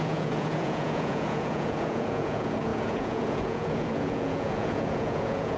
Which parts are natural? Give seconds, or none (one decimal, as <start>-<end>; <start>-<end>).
none